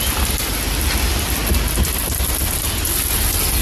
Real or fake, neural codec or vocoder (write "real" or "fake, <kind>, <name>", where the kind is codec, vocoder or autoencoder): real